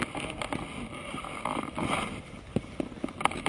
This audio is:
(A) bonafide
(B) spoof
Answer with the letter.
A